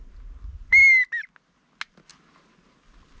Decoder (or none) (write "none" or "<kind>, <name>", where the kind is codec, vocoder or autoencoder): none